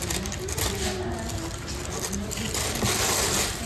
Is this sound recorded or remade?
recorded